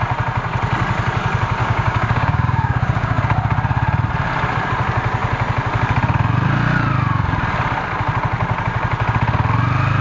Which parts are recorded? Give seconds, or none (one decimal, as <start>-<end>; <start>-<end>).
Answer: 0.0-1.6; 3.2-10.0